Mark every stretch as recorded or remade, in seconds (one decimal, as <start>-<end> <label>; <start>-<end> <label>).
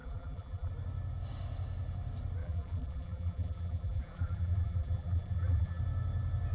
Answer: 0.0-0.7 remade; 0.7-2.4 recorded; 2.4-5.8 remade; 5.8-6.5 recorded